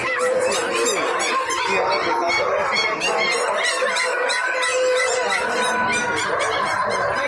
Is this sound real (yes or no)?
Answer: yes